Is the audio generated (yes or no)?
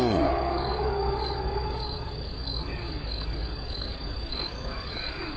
yes